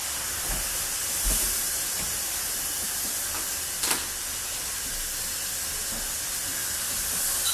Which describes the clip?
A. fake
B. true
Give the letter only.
B